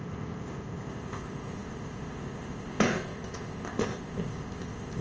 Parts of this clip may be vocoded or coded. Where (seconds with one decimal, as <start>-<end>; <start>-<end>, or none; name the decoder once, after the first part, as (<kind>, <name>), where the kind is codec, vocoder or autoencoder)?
0.0-5.0 (codec, ZipCodec)